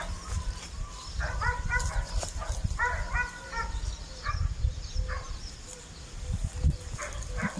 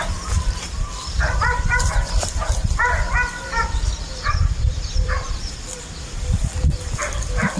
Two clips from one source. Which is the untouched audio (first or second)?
first